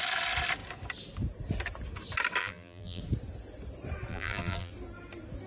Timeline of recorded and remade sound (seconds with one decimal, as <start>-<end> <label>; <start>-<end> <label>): 0.0-2.4 recorded; 2.4-3.0 remade; 3.0-4.1 recorded; 4.1-4.7 remade; 4.7-5.5 recorded